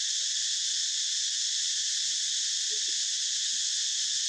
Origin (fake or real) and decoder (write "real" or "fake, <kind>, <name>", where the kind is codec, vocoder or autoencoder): real